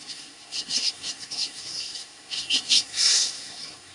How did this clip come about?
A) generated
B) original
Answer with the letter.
A